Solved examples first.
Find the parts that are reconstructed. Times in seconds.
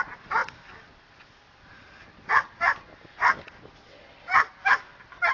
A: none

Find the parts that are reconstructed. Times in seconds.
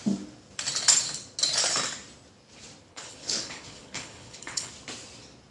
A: 2.9-4.7 (codec, HILCodec)